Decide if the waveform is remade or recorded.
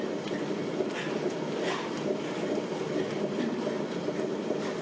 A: recorded